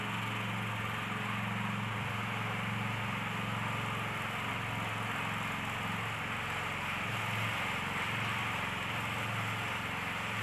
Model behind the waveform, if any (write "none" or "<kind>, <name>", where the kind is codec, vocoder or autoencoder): none